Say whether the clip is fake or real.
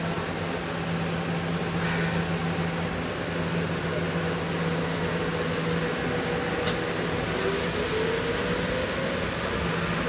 real